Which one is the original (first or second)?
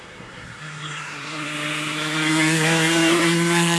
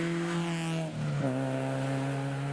second